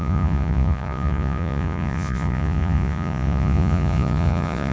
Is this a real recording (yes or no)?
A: no